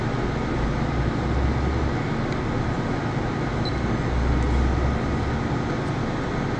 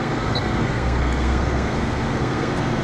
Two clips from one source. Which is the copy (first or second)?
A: second